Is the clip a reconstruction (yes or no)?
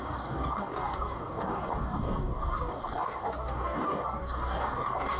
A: yes